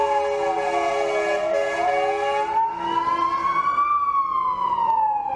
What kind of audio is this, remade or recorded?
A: recorded